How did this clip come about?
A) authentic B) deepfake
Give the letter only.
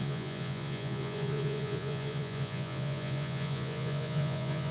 B